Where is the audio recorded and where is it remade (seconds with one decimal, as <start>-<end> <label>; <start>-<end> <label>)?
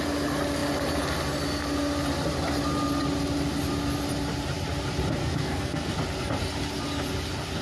0.0-5.2 recorded; 5.2-5.9 remade; 5.9-7.6 recorded